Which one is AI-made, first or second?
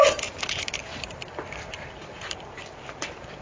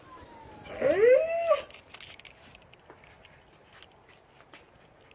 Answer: first